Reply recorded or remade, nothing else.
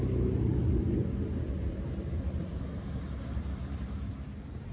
remade